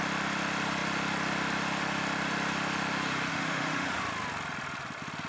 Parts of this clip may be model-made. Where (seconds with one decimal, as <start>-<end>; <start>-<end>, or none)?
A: 3.3-4.0

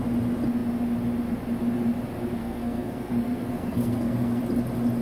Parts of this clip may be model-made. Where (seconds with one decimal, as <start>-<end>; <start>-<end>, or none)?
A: 2.4-4.4

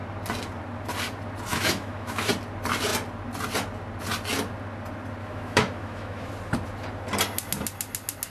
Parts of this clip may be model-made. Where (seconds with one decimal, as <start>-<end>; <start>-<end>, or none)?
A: 1.5-2.3; 5.2-6.3

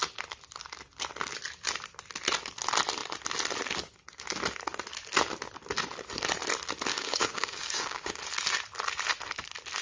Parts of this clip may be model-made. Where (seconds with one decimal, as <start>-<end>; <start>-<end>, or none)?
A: 6.9-8.2

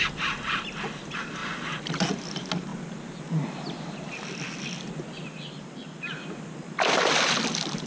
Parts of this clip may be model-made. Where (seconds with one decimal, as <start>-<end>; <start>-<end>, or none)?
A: none

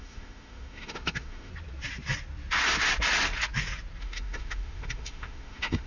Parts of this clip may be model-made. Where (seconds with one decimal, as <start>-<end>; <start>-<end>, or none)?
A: 0.0-1.5; 4.0-5.9

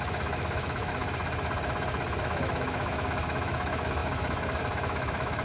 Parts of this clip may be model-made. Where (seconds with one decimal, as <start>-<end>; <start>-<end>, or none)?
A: 0.0-1.0; 2.2-5.4

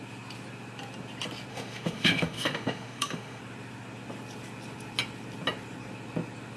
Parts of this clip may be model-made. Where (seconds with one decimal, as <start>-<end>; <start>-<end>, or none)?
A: 1.5-3.4